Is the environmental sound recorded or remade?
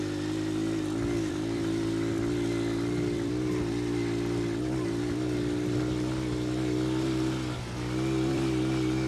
remade